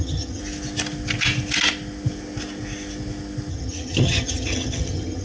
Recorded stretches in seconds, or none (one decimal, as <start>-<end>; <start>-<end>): 0.4-3.5